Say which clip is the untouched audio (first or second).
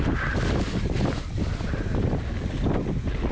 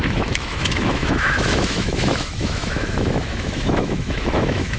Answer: first